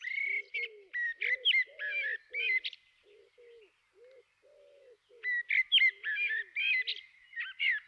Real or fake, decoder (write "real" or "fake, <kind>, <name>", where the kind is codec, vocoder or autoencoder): real